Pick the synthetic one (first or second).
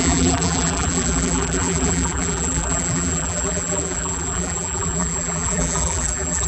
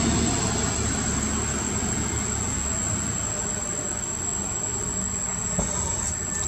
first